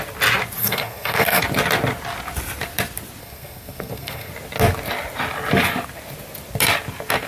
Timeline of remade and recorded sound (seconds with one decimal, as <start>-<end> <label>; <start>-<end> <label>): 0.0-0.6 recorded; 0.6-1.4 remade; 1.4-3.2 recorded; 3.2-4.3 remade; 4.3-7.3 recorded